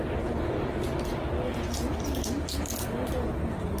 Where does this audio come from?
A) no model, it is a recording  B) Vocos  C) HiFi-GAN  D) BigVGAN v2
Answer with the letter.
A